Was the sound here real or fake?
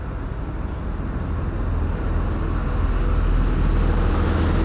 real